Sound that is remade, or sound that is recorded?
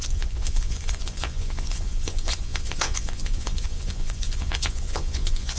remade